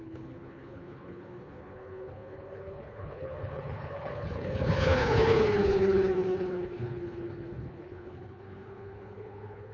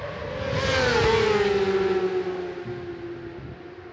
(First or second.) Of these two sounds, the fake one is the first